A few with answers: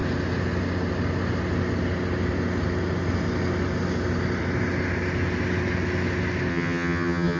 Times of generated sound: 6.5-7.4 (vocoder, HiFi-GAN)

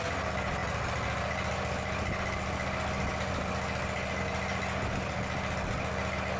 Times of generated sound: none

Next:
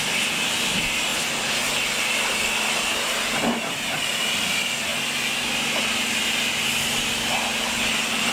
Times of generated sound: none

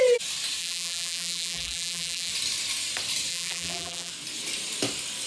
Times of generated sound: 0.6-2.3 (vocoder, BigVGAN v2); 3.3-4.1